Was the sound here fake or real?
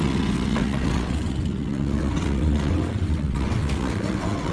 fake